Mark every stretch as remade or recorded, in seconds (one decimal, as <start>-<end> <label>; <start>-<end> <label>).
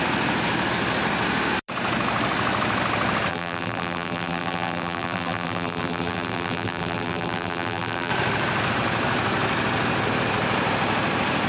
0.0-3.3 recorded; 3.3-8.1 remade; 8.1-11.5 recorded